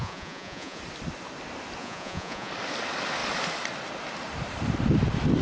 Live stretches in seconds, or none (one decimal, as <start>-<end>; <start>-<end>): 0.8-1.8; 2.5-5.4